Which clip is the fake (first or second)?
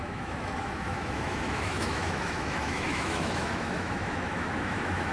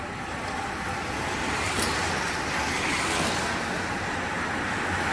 first